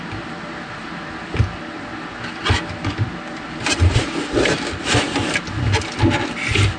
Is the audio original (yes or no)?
yes